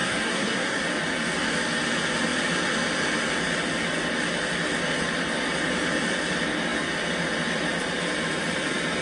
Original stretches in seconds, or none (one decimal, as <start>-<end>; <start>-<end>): 0.8-9.0